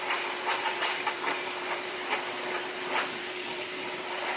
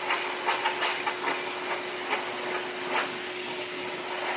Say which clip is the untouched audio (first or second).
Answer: second